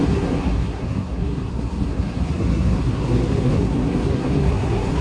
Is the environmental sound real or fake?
fake